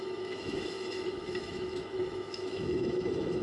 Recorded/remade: remade